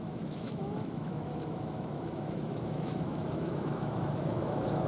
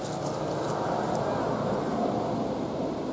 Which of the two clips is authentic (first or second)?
second